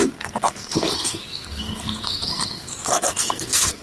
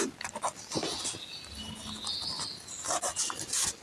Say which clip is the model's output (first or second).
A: first